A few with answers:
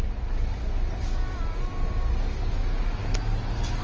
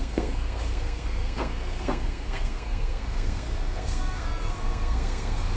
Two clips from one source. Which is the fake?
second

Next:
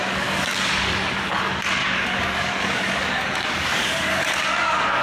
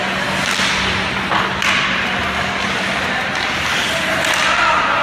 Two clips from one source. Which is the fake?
first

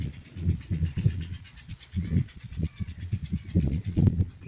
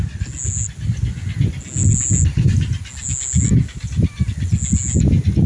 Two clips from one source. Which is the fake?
first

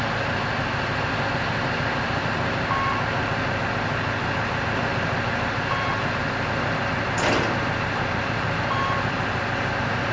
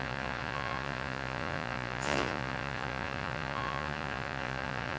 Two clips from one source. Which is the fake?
second